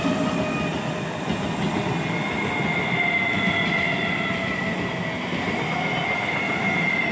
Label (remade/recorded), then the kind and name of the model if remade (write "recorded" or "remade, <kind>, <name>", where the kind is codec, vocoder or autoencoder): recorded